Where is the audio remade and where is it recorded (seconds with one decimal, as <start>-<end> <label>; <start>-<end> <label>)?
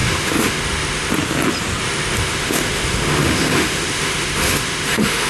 0.0-1.1 remade; 1.1-1.8 recorded; 1.8-5.3 remade